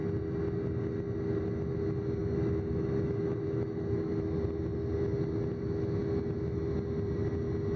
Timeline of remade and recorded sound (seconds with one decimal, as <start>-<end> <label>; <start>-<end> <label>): 0.0-2.2 recorded; 2.2-4.1 remade; 4.1-7.8 recorded